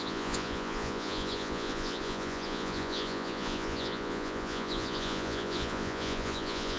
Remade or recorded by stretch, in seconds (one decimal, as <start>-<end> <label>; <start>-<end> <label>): 0.0-6.8 remade